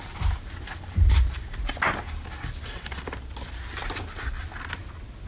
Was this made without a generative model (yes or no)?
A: yes